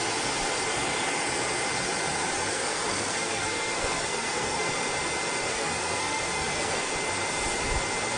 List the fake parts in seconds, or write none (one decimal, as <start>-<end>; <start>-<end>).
2.5-4.7; 5.5-6.9